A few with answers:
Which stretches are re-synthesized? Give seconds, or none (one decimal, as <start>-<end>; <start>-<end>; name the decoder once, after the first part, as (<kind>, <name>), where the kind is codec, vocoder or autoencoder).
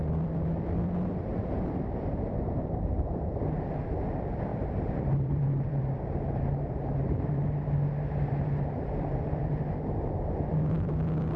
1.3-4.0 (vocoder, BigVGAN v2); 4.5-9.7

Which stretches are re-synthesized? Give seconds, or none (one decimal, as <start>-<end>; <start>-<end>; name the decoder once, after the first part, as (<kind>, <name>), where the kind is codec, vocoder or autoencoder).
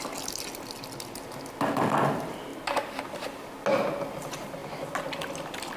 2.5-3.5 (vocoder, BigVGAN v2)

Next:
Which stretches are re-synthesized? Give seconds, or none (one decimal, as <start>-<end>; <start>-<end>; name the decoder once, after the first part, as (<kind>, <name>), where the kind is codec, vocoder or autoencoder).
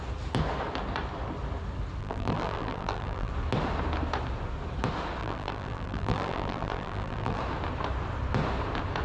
2.0-3.3 (vocoder, BigVGAN v2); 5.2-7.4